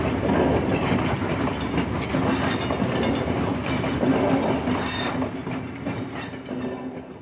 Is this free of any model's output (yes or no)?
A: yes